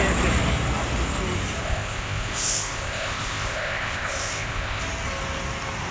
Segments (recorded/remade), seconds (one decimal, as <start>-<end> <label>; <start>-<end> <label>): 0.0-1.6 recorded; 1.6-4.8 remade; 4.8-5.9 recorded